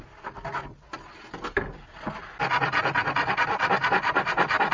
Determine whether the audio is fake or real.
real